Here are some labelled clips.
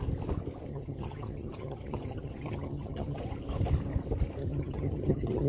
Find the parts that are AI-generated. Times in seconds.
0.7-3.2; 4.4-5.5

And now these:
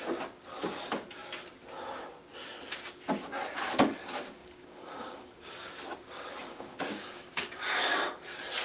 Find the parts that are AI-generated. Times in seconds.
4.4-5.7; 6.4-8.1

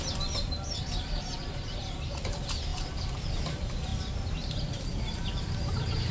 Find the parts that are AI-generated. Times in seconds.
0.0-3.9; 4.6-6.1

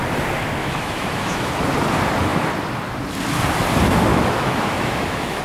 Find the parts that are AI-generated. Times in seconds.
0.6-1.5; 4.1-5.4

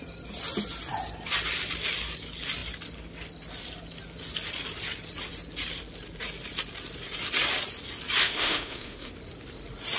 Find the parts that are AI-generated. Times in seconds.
8.2-9.1